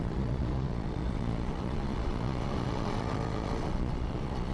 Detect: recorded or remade remade